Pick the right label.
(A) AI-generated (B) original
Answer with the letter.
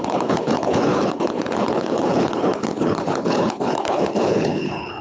A